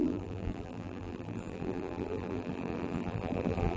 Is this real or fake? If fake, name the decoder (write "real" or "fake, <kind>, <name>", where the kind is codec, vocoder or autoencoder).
fake, vocoder, BigVGAN v2